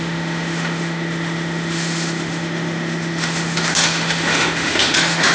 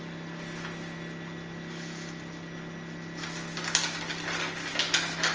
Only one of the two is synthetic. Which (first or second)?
first